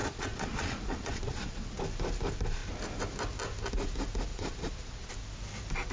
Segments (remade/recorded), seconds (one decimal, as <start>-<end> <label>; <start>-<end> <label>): 0.0-1.8 remade; 1.8-4.3 recorded; 4.3-5.1 remade; 5.1-5.9 recorded